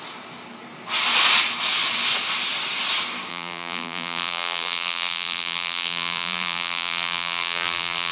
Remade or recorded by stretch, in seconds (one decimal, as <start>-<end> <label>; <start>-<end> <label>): 0.0-3.3 recorded; 3.3-8.1 remade